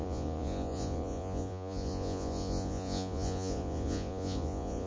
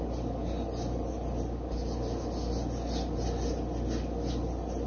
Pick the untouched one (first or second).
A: second